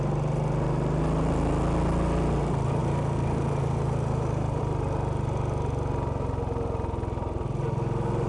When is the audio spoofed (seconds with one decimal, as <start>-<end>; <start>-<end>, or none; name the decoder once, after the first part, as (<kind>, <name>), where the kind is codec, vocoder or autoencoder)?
2.8-4.6 (vocoder, BigVGAN v2)